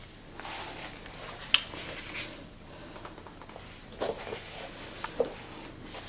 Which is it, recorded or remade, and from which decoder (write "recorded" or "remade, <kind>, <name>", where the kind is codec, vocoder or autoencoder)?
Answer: recorded